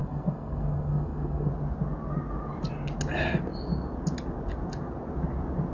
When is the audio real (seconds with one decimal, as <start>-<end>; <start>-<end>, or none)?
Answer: 1.5-5.7